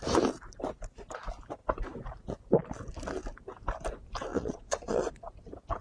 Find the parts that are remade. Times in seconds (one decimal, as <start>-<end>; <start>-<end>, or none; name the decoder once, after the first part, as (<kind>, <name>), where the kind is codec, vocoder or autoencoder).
4.3-5.2 (vocoder, Vocos)